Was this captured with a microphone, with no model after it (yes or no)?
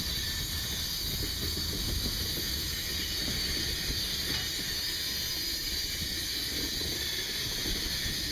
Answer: yes